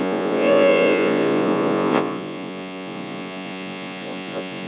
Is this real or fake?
fake